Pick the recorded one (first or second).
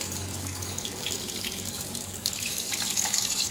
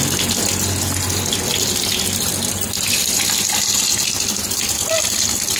second